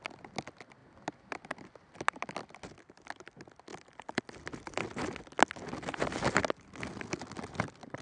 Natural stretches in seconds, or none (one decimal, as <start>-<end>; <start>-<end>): 0.0-3.7; 4.2-8.0